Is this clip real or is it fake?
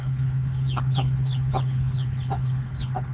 fake